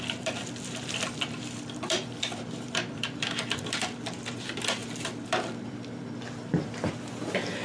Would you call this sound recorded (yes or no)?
no